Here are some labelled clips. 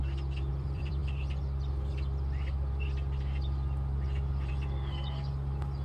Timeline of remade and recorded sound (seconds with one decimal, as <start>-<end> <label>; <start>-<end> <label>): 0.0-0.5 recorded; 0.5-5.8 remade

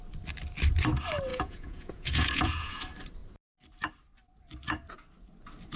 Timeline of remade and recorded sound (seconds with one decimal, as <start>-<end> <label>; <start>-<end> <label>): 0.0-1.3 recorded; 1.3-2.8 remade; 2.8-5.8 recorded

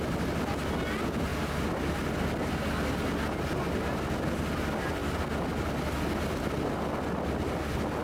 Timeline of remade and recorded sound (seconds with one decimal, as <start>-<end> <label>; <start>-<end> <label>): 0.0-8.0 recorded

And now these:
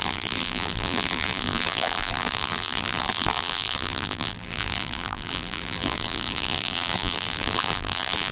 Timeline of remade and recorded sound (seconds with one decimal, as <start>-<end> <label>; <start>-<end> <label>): 0.0-8.3 remade